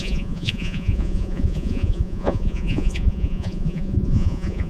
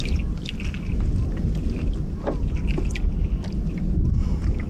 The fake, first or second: first